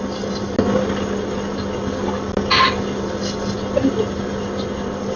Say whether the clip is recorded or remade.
recorded